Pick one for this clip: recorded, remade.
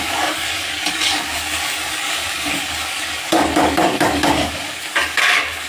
remade